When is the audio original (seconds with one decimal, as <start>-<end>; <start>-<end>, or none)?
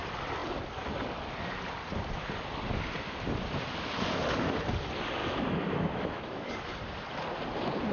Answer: 0.0-5.2; 6.5-7.9